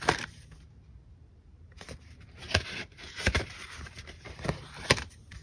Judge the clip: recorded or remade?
remade